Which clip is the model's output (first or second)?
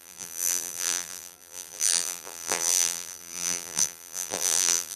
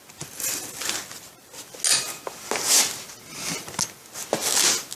first